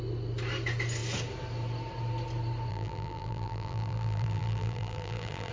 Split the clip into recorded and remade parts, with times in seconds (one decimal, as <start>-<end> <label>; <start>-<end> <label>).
0.0-2.7 recorded; 2.7-5.5 remade